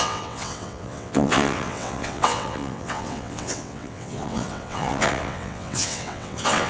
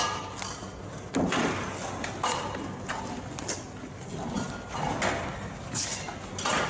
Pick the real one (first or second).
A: second